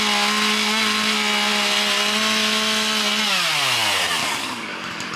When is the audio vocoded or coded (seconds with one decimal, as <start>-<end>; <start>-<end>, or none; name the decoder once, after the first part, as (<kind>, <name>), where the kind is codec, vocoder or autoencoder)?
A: 4.2-5.2 (codec, DAC)